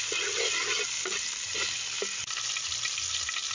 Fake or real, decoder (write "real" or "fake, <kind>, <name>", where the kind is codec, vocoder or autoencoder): real